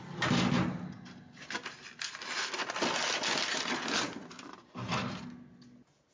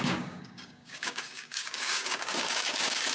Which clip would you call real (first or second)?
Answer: first